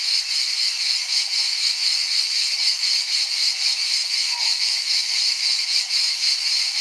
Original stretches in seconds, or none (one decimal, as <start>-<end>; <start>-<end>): none